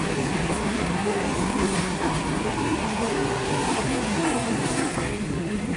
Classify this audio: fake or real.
fake